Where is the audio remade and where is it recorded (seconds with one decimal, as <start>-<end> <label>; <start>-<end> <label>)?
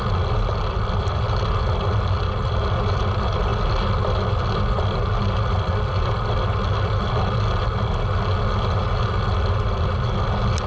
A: 0.0-10.7 recorded